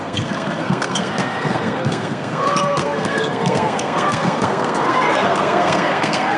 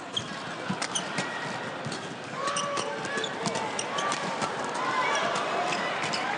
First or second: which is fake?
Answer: first